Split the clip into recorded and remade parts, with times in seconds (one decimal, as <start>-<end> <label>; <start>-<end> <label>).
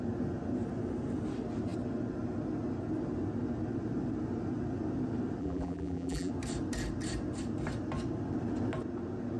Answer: 0.0-5.4 recorded; 5.4-6.3 remade; 6.3-9.4 recorded